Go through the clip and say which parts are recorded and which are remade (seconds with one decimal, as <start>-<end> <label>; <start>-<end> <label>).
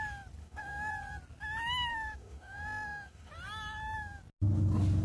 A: 0.0-0.4 recorded; 0.4-0.9 remade; 0.9-1.9 recorded; 1.9-3.3 remade; 3.3-5.0 recorded